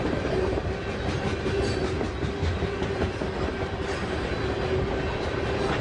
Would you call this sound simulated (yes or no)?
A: no